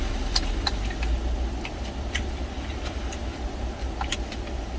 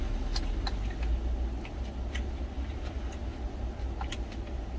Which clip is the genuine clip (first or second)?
second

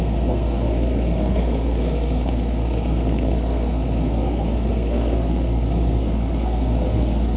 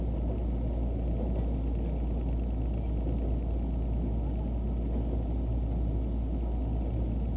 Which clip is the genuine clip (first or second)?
second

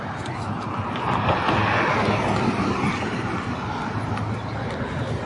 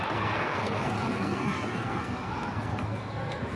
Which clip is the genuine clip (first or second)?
first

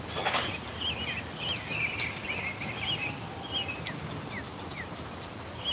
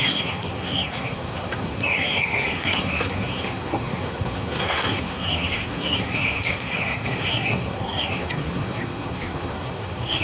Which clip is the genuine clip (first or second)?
first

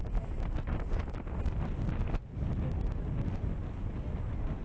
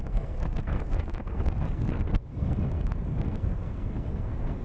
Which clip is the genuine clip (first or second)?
first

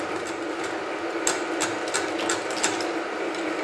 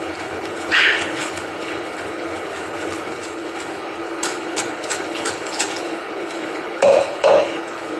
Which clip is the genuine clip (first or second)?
first